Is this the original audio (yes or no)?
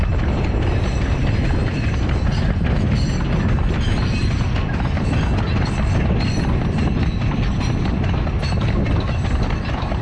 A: yes